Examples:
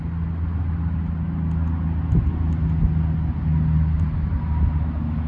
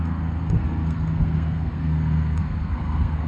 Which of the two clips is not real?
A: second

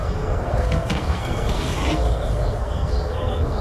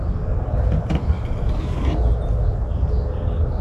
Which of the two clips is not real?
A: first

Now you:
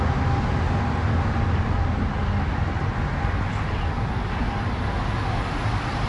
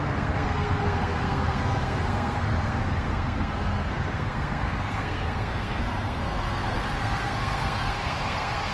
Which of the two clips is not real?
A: second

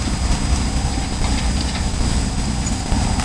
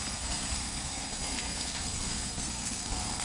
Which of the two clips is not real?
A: second